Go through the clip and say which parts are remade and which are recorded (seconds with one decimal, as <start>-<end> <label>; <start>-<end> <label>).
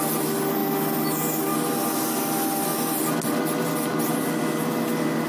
0.0-5.3 recorded